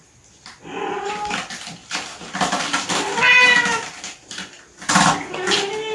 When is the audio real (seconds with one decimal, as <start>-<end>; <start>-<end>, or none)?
0.0-5.9